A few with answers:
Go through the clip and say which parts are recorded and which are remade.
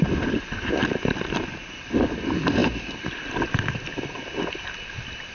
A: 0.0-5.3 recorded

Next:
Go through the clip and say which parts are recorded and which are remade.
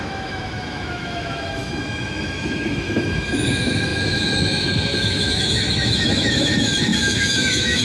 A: 0.0-7.8 remade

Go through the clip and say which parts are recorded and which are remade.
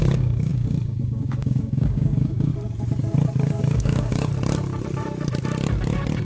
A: 0.0-2.5 remade; 2.5-3.6 recorded; 3.6-4.3 remade; 4.3-6.2 recorded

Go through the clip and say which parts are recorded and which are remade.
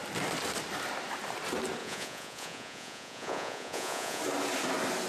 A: 0.0-1.8 recorded; 1.8-4.2 remade; 4.2-5.1 recorded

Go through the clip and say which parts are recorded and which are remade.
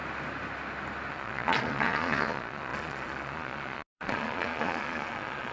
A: 0.0-1.1 recorded; 1.1-5.5 remade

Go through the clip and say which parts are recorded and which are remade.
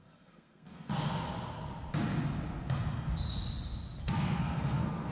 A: 0.0-0.9 remade; 0.9-4.0 recorded; 4.0-5.1 remade